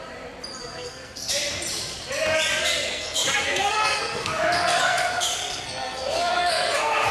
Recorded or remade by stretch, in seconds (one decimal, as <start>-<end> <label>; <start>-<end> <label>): 0.0-0.6 recorded; 0.6-1.3 remade; 1.3-2.5 recorded; 2.5-7.1 remade